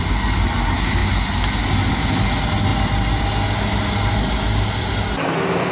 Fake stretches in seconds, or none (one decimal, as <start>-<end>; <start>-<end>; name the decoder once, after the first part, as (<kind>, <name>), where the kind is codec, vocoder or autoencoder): none